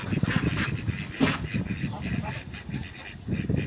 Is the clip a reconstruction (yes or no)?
no